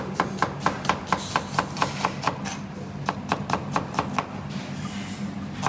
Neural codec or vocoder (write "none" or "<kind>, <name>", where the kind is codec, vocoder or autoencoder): none